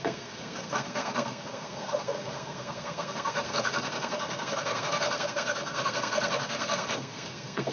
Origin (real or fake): fake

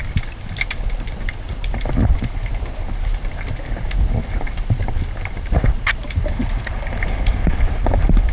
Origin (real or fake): real